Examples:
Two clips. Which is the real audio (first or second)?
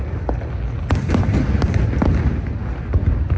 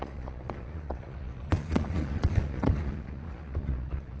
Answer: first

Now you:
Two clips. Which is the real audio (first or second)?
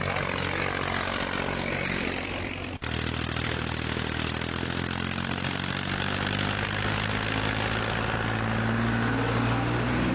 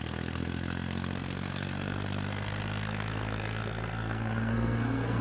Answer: first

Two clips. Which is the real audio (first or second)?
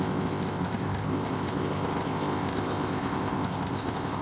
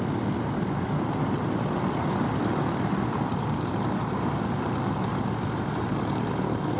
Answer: second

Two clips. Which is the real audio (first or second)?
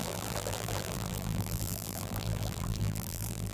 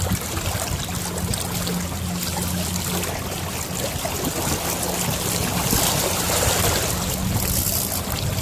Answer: second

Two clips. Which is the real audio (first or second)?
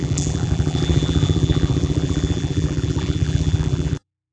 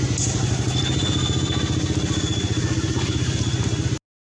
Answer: second